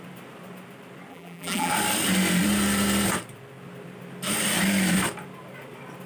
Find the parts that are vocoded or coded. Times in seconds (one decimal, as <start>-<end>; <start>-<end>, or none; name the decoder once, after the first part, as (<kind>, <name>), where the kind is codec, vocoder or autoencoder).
1.1-1.7 (vocoder, BigVGAN v2)